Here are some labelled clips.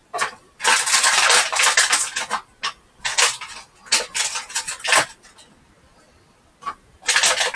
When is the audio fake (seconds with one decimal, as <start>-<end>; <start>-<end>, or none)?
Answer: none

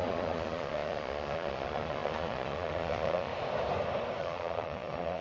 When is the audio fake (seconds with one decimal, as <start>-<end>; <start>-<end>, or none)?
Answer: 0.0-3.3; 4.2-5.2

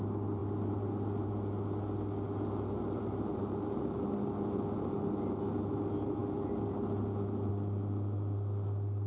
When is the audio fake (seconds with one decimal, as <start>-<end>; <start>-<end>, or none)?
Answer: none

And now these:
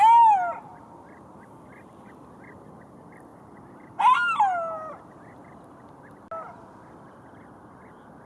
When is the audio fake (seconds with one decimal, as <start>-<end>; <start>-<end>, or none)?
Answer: none

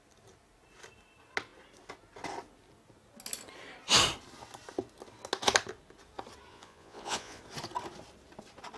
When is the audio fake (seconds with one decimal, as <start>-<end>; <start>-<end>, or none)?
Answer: 6.5-7.4

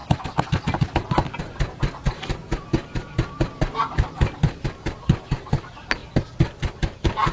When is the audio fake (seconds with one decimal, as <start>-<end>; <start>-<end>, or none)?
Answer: none

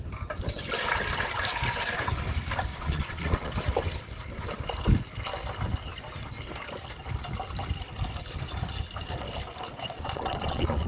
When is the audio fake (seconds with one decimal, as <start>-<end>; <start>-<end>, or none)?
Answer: 2.7-3.5; 9.8-10.9

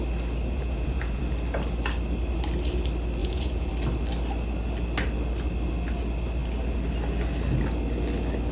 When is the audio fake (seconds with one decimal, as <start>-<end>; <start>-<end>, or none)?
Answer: 0.5-1.2; 3.2-3.7